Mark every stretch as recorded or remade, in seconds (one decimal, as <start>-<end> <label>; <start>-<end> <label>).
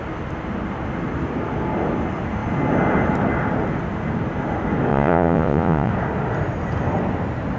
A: 0.0-4.9 recorded; 4.9-5.9 remade; 5.9-7.6 recorded